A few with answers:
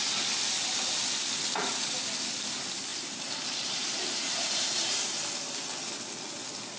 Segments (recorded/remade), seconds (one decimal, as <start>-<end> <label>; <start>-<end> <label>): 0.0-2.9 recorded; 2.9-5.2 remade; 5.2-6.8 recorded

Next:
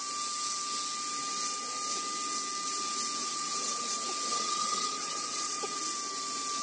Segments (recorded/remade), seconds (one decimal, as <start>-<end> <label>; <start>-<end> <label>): 0.0-3.2 recorded; 3.2-3.8 remade; 3.8-4.3 recorded; 4.3-5.8 remade; 5.8-6.6 recorded

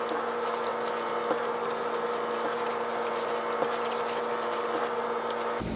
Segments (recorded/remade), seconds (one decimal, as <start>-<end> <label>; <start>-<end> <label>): 0.0-5.8 recorded

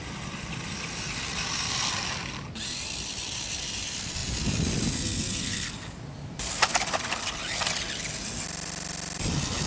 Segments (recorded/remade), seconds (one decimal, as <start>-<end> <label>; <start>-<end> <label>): 0.0-9.7 recorded

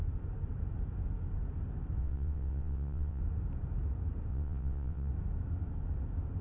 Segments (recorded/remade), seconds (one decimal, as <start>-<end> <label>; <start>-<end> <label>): 0.0-2.0 recorded; 2.0-3.2 remade; 3.2-4.3 recorded; 4.3-5.1 remade; 5.1-6.4 recorded

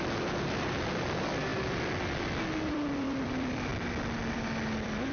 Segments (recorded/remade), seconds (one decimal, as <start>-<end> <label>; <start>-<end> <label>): 0.0-3.7 remade; 3.7-4.3 recorded; 4.3-5.1 remade

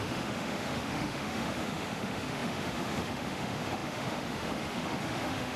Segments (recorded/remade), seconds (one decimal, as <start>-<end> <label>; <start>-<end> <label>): 0.0-5.6 remade